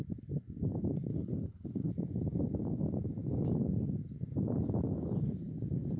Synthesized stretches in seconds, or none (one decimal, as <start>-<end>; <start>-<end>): 1.1-1.9